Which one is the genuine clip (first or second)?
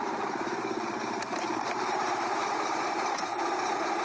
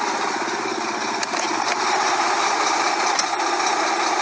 second